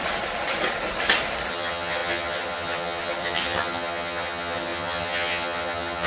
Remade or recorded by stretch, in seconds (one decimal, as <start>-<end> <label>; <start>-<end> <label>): 0.0-1.5 recorded; 1.5-6.1 remade